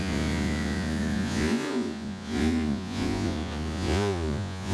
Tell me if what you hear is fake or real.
fake